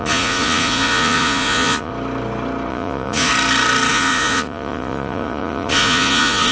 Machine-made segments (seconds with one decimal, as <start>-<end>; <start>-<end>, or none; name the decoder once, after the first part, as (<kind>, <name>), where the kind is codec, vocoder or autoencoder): 0.0-1.9 (vocoder, Vocos); 2.7-3.3; 3.9-6.5